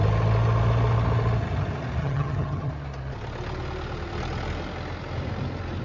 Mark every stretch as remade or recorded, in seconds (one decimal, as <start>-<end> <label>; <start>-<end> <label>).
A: 0.0-2.0 recorded; 2.0-2.7 remade; 2.7-5.8 recorded

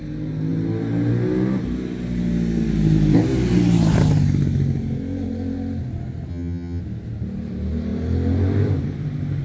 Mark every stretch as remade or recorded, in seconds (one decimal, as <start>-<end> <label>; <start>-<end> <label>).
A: 0.0-6.3 recorded; 6.3-6.8 remade; 6.8-9.4 recorded

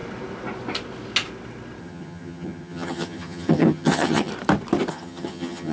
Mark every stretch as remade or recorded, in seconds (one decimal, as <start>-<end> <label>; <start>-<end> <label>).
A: 0.0-1.8 recorded; 1.8-4.3 remade; 4.3-4.9 recorded; 4.9-5.7 remade

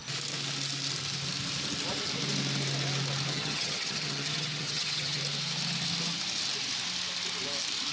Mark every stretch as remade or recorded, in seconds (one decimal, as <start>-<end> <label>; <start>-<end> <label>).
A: 0.0-3.3 recorded; 3.3-5.2 remade; 5.2-7.9 recorded